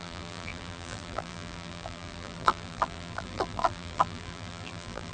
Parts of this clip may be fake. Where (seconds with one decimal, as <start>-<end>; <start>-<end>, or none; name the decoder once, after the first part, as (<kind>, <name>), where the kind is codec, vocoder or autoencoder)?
0.0-5.1 (vocoder, BigVGAN v2)

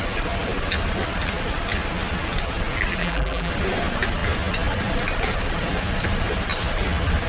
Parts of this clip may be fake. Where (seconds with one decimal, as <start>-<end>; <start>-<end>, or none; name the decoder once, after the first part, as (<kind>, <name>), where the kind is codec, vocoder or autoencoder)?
3.0-3.5 (vocoder, BigVGAN v2)

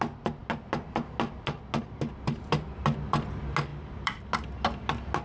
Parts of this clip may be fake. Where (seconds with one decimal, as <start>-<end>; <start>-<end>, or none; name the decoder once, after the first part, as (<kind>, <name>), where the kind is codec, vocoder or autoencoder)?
3.7-4.2 (vocoder, BigVGAN v2)

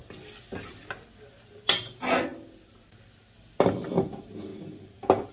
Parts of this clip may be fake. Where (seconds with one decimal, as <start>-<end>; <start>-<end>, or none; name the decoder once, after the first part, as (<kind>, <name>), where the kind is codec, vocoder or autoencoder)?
0.0-1.1 (vocoder, BigVGAN v2)

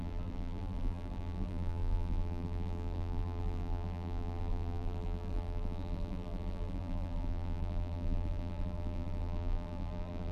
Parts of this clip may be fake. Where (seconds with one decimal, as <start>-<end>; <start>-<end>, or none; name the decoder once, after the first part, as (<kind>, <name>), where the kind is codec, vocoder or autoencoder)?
0.0-10.3 (vocoder, BigVGAN v2)

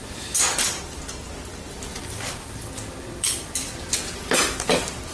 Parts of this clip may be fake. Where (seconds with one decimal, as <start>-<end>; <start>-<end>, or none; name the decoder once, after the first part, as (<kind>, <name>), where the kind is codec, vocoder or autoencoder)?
0.0-1.0 (vocoder, BigVGAN v2); 1.5-3.8